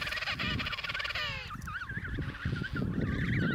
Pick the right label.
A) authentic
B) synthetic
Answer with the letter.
A